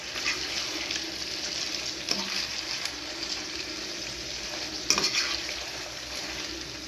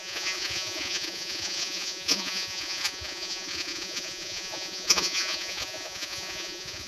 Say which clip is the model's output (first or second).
second